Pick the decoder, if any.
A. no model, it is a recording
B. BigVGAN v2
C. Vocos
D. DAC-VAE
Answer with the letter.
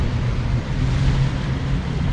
B